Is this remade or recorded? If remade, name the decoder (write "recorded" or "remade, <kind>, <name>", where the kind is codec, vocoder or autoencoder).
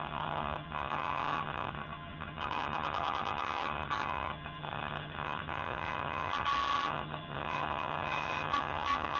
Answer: remade, vocoder, HiFi-GAN